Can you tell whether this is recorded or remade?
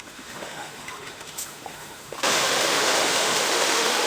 remade